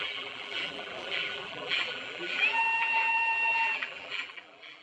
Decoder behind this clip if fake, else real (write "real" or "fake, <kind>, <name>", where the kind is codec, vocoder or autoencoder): fake, vocoder, BigVGAN v2